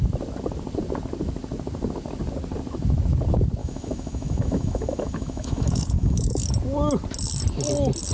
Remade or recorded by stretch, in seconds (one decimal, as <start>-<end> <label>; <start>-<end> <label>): 0.0-3.6 recorded; 3.6-6.4 remade; 6.4-8.1 recorded